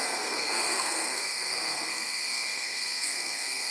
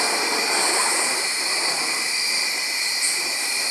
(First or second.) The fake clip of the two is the first